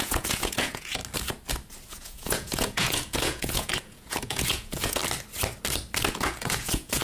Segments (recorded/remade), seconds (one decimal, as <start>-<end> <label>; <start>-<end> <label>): 0.0-1.0 remade; 1.0-1.9 recorded; 1.9-5.0 remade; 5.0-6.1 recorded; 6.1-7.0 remade